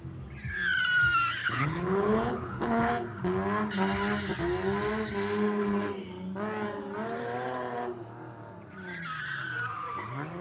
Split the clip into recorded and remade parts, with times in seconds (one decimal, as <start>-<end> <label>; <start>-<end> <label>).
0.0-1.4 recorded; 1.4-2.9 remade; 2.9-10.4 recorded